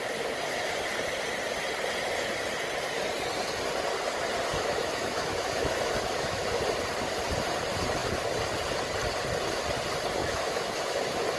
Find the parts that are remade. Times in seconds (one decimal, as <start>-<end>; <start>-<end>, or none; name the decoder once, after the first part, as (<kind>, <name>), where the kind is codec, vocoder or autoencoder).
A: 4.5-6.6 (autoencoder, DAC-VAE); 10.2-11.4